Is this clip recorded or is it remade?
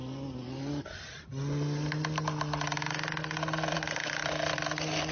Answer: recorded